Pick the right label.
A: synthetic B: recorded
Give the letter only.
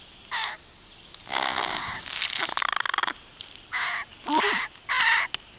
B